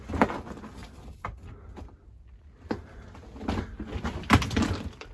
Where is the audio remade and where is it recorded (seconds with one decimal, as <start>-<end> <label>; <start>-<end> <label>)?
0.0-5.1 recorded